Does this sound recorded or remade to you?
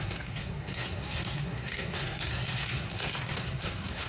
remade